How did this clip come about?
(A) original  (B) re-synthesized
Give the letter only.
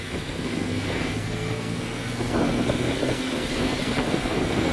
B